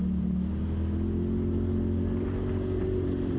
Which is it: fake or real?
real